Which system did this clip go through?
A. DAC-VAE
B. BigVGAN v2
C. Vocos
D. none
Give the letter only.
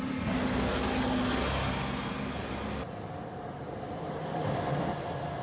D